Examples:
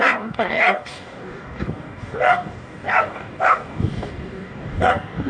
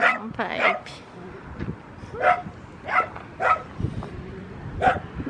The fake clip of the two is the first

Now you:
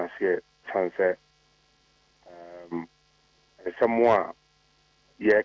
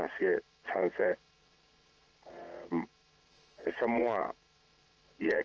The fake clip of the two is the second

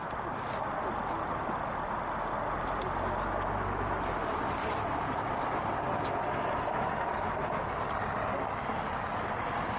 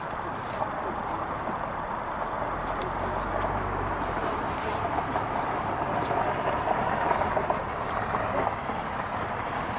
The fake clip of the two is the second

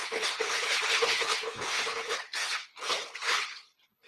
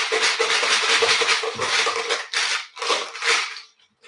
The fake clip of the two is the first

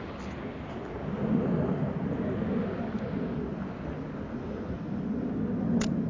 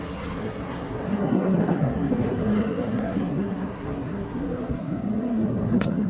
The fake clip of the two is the second